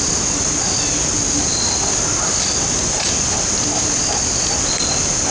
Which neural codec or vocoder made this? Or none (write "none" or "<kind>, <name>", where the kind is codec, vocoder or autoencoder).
none